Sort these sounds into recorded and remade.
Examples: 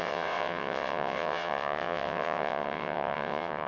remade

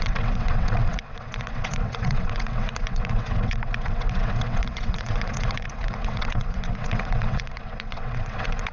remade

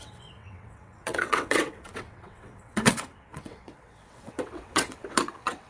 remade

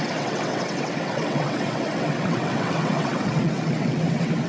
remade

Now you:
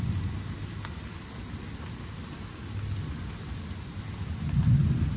recorded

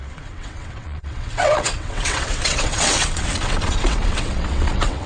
remade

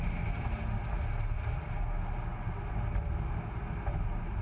recorded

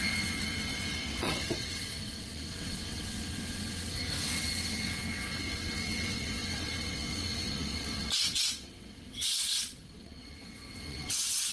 remade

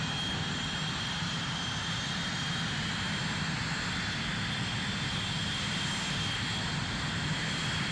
recorded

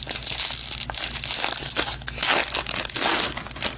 recorded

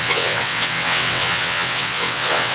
remade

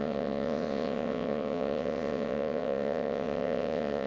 remade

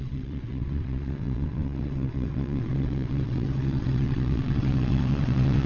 remade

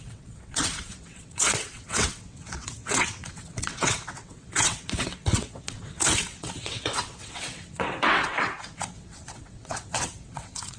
remade